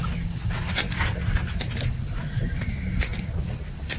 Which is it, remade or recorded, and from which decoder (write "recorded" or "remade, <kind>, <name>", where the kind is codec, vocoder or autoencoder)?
recorded